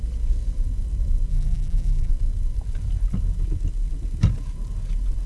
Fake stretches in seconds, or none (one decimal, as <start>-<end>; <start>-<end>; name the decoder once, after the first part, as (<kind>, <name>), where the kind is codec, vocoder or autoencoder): 1.3-2.1 (vocoder, BigVGAN v2)